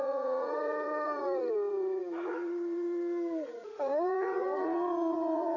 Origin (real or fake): fake